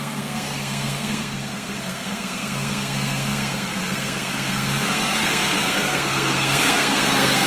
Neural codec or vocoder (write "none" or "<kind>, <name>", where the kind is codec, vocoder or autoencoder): codec, SNAC